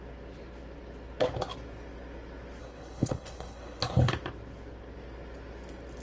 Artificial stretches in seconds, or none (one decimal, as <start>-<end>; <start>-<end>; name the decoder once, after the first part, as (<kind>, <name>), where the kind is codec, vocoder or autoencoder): 2.6-4.1 (codec, HILCodec)